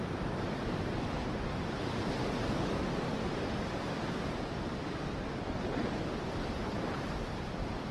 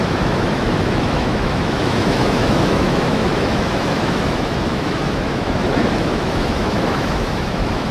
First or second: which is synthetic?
second